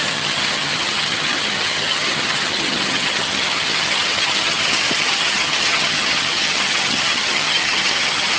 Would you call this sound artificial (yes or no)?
yes